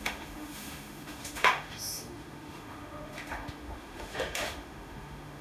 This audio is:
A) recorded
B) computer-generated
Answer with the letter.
B